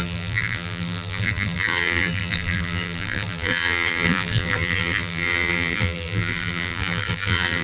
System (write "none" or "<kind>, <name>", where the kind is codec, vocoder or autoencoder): vocoder, BigVGAN v2